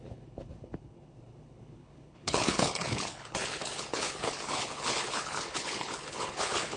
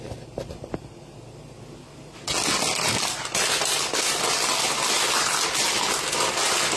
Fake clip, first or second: first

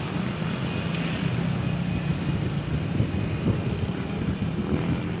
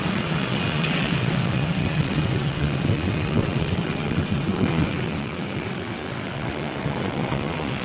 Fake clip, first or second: second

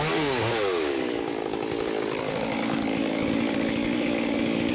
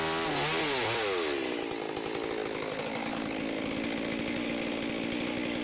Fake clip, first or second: first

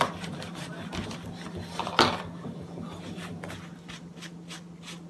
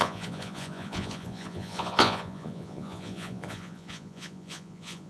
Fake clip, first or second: second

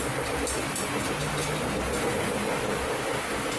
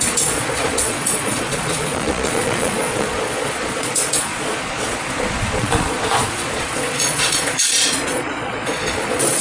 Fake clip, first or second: second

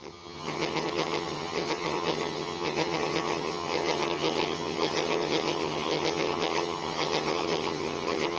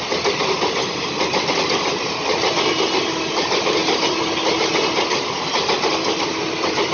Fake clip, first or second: first